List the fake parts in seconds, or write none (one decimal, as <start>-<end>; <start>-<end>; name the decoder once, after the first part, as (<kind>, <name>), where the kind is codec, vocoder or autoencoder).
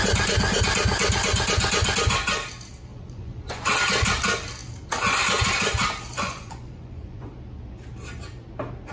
2.9-3.7 (vocoder, Vocos); 6.1-7.3